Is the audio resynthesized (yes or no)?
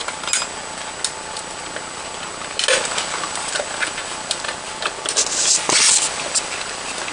no